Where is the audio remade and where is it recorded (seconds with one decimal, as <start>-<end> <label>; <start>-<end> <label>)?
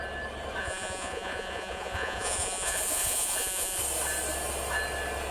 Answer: 0.0-0.6 recorded; 0.6-3.8 remade; 3.8-5.3 recorded